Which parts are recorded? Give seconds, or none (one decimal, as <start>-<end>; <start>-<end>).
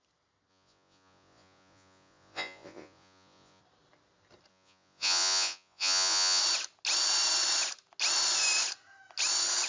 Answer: 0.0-0.5; 3.6-4.5; 6.4-9.7